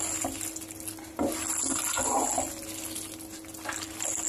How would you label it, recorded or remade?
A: recorded